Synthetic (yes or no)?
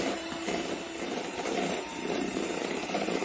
yes